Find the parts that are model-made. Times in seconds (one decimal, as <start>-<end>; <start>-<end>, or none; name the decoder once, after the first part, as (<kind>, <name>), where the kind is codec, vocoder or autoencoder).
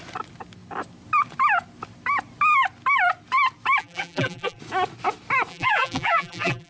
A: 3.8-4.6 (vocoder, BigVGAN v2); 5.5-6.7